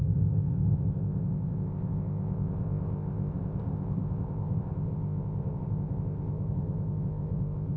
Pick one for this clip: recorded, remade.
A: remade